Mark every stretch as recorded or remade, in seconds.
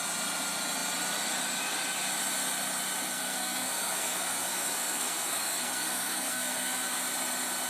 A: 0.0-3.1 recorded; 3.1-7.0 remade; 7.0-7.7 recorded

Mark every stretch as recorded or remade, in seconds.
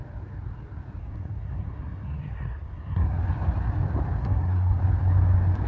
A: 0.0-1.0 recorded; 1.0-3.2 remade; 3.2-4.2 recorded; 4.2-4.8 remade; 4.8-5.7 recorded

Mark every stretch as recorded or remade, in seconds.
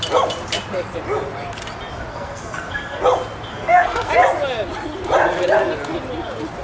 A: 0.0-2.1 recorded; 2.1-3.0 remade; 3.0-3.5 recorded; 3.5-4.1 remade; 4.1-6.6 recorded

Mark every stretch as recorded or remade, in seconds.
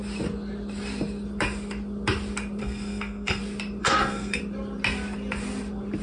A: 0.0-2.6 recorded; 2.6-3.4 remade; 3.4-3.8 recorded; 3.8-4.4 remade; 4.4-6.0 recorded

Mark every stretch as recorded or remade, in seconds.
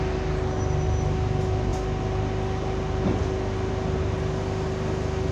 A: 0.0-5.3 recorded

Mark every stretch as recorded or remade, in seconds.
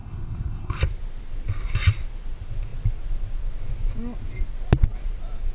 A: 0.0-0.8 remade; 0.8-5.5 recorded